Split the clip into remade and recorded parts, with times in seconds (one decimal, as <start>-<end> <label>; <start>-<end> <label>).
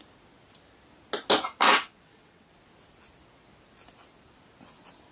0.0-1.7 recorded; 1.7-2.5 remade; 2.5-5.1 recorded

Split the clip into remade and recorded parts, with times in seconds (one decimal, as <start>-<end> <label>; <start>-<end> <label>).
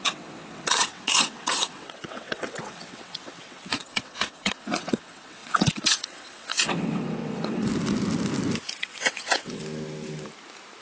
0.0-7.7 remade; 7.7-8.8 recorded; 8.8-9.6 remade; 9.6-10.8 recorded